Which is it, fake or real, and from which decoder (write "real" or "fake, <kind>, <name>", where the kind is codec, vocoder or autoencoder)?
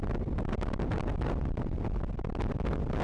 real